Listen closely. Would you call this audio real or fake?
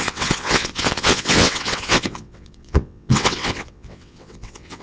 fake